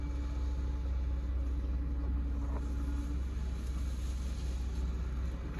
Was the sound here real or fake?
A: real